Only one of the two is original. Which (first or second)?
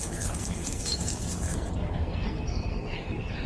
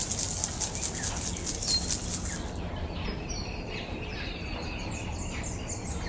second